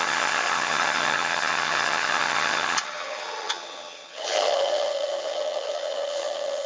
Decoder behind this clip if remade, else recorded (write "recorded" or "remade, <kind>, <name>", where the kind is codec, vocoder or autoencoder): remade, vocoder, HiFi-GAN